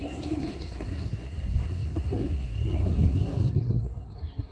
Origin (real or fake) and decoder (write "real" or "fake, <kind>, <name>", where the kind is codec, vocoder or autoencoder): fake, codec, SNAC